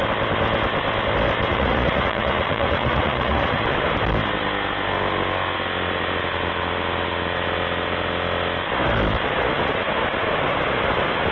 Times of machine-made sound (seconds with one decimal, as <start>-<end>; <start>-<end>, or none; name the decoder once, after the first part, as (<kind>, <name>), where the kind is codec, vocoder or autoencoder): 1.5-3.6 (vocoder, Vocos)